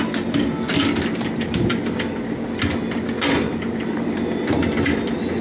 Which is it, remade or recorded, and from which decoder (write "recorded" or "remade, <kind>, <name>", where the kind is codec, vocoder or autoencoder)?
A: recorded